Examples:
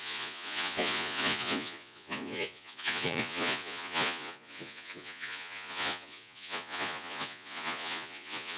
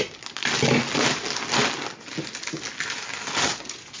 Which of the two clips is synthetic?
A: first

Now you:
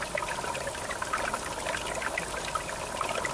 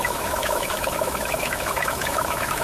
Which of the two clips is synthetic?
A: second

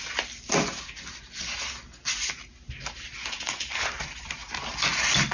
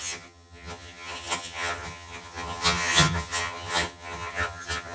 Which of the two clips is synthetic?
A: second